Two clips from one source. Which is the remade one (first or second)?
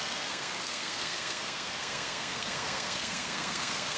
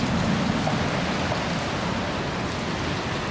first